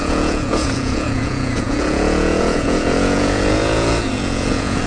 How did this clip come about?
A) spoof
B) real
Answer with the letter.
A